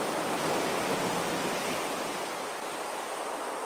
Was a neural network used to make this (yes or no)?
yes